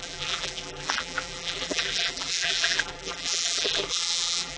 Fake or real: fake